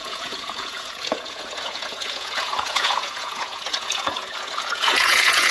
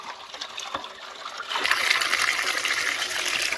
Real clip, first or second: second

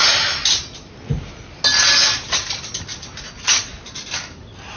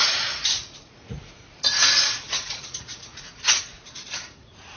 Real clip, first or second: first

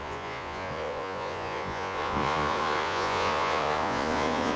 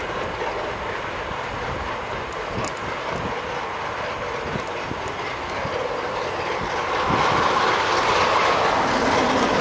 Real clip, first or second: second